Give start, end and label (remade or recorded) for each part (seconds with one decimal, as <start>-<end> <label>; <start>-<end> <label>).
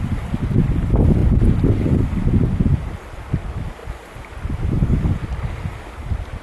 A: 0.0-6.4 recorded